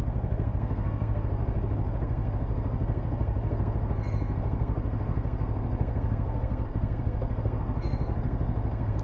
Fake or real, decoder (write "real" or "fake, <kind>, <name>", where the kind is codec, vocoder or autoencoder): fake, codec, SNAC